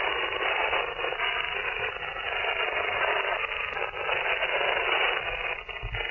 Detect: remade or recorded recorded